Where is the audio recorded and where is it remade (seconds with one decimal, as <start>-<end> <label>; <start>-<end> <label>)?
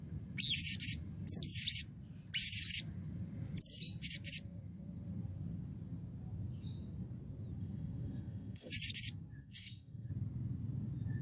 0.0-7.6 recorded; 7.6-8.7 remade; 8.7-9.4 recorded; 9.4-10.1 remade; 10.1-11.2 recorded